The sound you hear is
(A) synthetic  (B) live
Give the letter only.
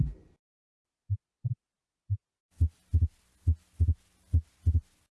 B